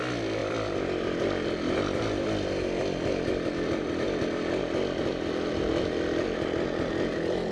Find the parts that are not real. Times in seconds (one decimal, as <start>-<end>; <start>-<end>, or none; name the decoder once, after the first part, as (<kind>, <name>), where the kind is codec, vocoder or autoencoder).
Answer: none

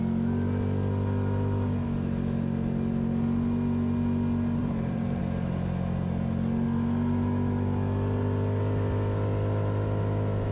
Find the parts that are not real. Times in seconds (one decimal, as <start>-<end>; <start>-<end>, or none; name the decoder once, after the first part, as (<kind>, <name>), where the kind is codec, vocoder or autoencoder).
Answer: 4.6-5.2 (vocoder, BigVGAN v2)

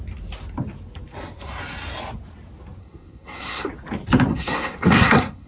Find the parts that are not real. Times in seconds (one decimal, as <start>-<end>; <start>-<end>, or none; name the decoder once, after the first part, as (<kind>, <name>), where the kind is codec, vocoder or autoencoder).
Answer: 2.8-3.7 (codec, SNAC); 4.3-5.5

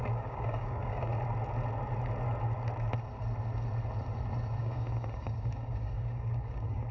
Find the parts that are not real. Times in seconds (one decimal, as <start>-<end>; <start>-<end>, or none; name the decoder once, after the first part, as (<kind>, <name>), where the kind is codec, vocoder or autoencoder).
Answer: 0.0-1.1 (codec, DAC); 4.6-6.9